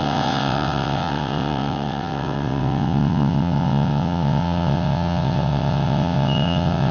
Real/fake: fake